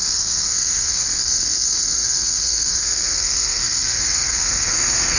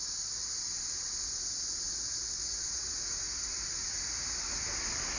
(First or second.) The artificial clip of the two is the first